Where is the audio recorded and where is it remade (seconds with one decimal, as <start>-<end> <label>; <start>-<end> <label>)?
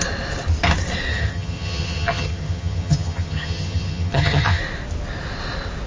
0.0-1.1 recorded; 1.1-4.6 remade; 4.6-5.9 recorded